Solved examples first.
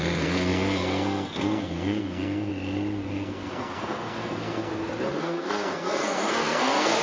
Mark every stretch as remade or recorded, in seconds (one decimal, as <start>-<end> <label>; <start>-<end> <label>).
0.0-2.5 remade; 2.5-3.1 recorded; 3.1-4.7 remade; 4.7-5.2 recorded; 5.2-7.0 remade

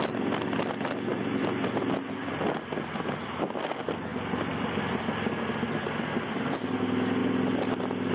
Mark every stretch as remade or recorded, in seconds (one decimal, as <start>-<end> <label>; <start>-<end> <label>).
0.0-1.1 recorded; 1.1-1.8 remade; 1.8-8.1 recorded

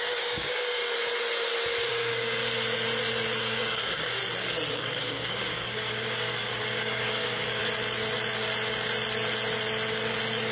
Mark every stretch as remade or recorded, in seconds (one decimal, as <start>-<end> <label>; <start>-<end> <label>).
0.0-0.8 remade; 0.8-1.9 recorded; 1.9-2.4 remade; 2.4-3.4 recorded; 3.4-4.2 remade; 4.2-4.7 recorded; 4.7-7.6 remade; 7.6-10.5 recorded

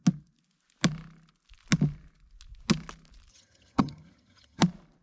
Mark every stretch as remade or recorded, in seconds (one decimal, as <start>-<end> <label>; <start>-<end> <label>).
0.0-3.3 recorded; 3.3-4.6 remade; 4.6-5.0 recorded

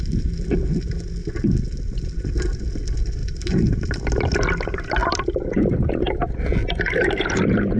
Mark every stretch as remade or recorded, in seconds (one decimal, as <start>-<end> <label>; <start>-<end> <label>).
0.0-3.2 recorded; 3.2-3.7 remade; 3.7-5.0 recorded; 5.0-5.9 remade; 5.9-7.8 recorded

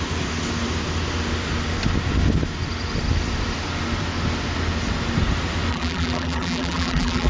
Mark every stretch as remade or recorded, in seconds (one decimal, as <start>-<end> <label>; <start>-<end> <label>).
0.0-5.7 recorded; 5.7-7.3 remade